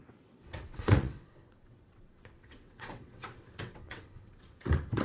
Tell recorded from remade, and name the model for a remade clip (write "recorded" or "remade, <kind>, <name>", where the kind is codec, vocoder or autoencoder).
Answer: remade, vocoder, WaveNeXt